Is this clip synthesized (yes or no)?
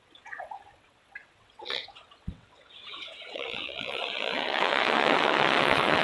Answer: yes